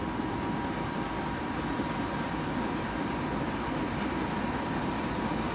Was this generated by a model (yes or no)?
no